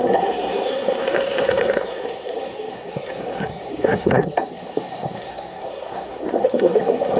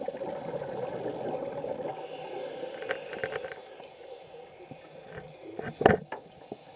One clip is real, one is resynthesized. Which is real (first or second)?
second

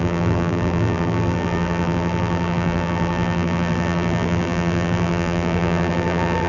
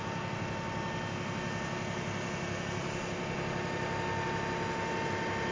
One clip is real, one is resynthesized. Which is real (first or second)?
second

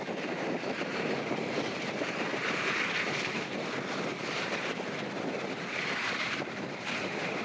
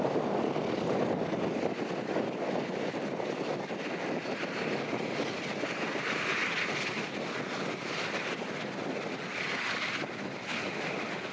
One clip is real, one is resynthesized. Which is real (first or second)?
second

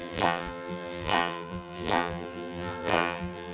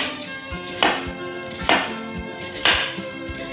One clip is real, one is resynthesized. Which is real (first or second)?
second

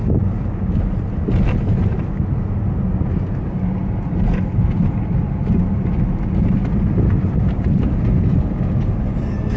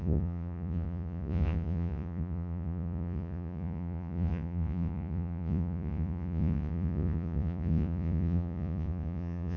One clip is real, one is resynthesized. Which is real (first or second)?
first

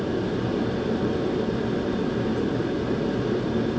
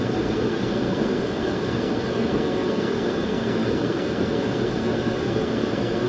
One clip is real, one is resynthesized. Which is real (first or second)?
first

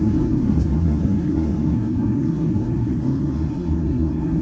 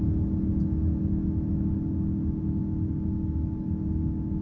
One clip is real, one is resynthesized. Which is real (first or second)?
second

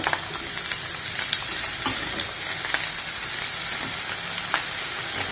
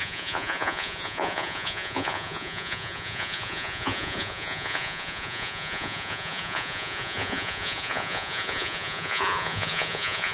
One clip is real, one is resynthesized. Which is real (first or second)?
first